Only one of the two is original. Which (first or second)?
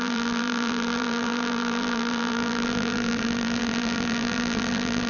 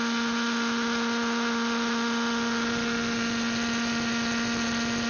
second